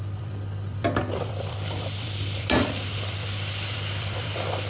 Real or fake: fake